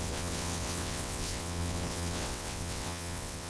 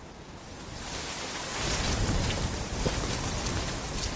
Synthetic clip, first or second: first